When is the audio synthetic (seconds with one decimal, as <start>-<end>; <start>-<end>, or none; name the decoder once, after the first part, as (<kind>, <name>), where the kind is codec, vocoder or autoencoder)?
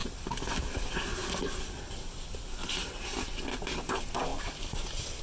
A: none